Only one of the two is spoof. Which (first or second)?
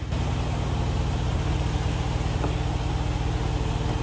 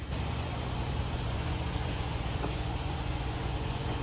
second